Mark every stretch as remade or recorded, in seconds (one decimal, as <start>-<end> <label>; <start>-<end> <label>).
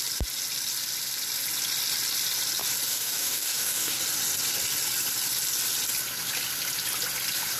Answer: 0.0-2.9 recorded; 2.9-4.0 remade; 4.0-7.6 recorded